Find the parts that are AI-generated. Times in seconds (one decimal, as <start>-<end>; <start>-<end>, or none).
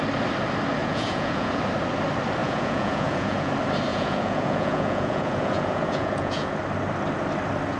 0.8-1.6; 2.4-3.5; 3.9-6.5